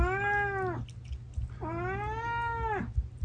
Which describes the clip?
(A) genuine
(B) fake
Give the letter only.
A